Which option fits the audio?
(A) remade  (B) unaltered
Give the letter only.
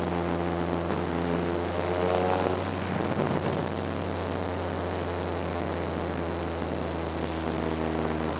B